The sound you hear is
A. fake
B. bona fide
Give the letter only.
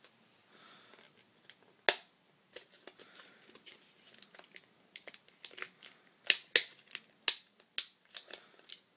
B